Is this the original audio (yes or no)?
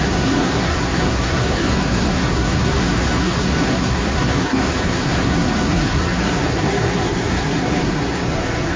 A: no